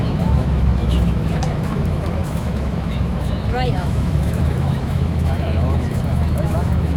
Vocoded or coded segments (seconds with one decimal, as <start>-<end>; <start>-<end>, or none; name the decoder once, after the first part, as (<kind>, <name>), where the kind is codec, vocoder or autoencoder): 0.0-7.0 (autoencoder, DAC-VAE)